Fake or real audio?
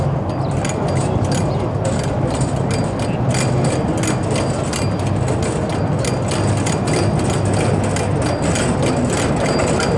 real